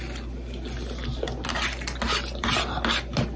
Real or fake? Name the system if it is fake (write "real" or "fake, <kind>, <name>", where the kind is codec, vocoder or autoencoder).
real